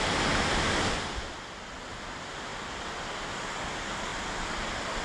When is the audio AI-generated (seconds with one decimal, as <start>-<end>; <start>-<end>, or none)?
4.1-5.0